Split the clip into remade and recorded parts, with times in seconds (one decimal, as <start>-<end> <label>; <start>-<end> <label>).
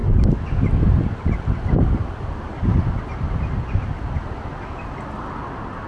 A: 0.0-5.9 recorded